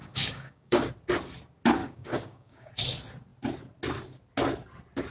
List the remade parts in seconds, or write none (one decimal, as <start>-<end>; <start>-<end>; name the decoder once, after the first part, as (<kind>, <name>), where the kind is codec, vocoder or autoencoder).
0.0-0.9 (codec, DAC); 1.8-2.7